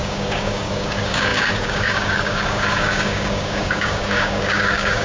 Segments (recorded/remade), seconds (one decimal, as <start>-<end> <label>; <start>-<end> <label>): 0.0-5.0 remade